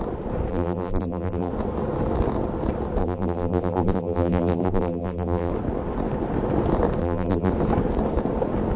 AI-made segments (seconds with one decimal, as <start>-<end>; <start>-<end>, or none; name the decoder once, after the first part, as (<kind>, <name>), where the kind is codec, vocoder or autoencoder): 0.5-1.5 (vocoder, BigVGAN v2); 3.0-5.5; 7.0-7.5